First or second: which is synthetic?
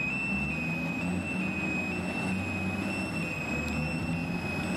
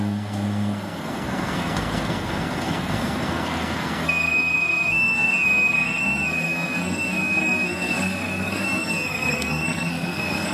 second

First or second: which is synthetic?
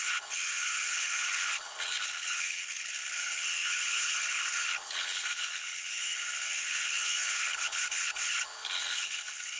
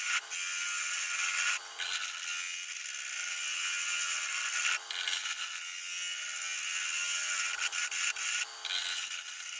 first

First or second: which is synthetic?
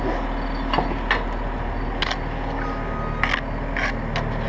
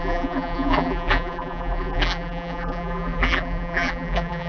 second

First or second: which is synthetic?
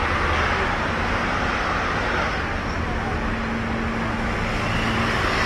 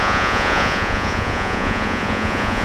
second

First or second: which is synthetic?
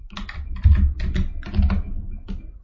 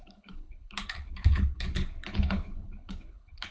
second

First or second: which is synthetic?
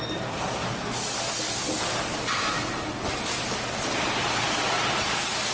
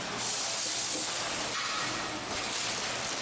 first